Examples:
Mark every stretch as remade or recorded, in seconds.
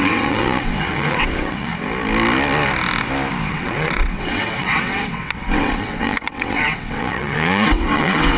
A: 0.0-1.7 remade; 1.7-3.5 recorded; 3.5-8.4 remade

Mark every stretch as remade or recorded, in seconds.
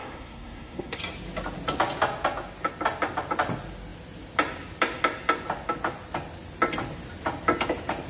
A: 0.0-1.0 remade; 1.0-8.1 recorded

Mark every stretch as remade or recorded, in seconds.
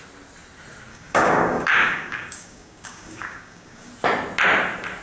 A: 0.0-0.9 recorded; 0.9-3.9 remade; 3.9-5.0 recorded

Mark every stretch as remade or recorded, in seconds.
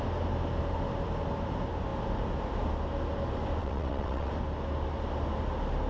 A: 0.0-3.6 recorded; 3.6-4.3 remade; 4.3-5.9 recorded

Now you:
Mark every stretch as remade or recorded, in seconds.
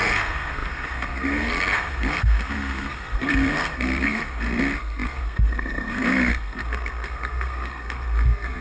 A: 0.0-8.6 remade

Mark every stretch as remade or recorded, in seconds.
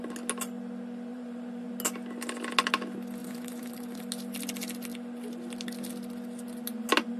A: 0.0-1.1 recorded; 1.1-1.7 remade; 1.7-3.2 recorded; 3.2-4.0 remade; 4.0-7.2 recorded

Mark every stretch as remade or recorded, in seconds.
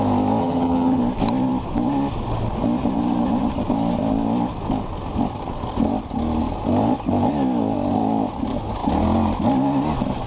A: 0.0-0.4 recorded; 0.4-1.0 remade; 1.0-10.3 recorded